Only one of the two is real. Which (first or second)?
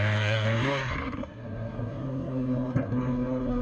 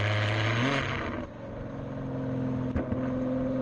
second